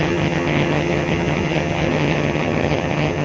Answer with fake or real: fake